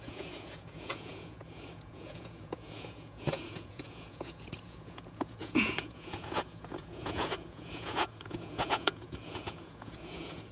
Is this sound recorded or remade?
remade